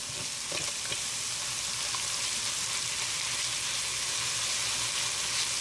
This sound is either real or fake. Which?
real